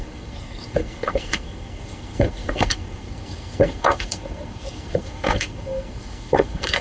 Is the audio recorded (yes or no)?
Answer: no